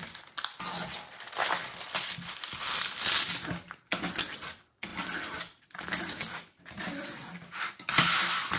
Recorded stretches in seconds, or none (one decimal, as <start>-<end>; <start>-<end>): 0.0-8.6